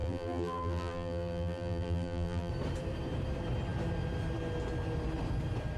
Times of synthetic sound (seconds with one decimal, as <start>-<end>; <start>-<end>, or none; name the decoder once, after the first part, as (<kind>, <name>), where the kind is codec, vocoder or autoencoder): 0.0-2.5 (vocoder, BigVGAN v2)